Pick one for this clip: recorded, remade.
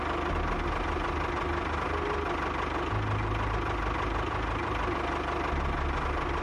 recorded